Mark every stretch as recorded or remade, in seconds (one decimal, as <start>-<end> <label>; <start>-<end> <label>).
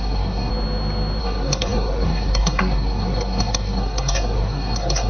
0.0-0.5 remade; 0.5-1.2 recorded; 1.2-5.1 remade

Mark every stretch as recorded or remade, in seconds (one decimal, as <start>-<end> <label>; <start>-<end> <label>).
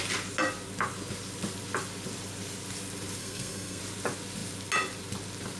0.0-3.2 recorded; 3.2-3.8 remade; 3.8-5.6 recorded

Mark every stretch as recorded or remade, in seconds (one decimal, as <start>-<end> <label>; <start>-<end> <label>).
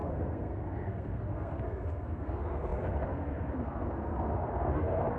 0.0-5.2 remade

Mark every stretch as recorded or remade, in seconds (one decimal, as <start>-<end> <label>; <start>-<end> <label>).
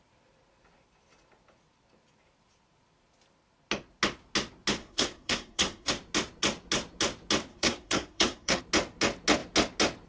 0.0-4.8 recorded; 4.8-5.9 remade; 5.9-7.5 recorded; 7.5-8.6 remade; 8.6-10.1 recorded